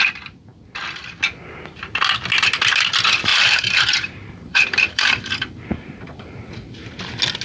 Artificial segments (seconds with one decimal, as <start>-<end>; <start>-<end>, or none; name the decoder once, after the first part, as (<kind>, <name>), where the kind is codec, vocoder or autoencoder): 3.3-7.0 (vocoder, BigVGAN v2)